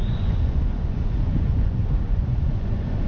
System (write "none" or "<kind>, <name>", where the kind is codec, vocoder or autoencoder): vocoder, Vocos